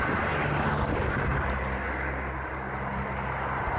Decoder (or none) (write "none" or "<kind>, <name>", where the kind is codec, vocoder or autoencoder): none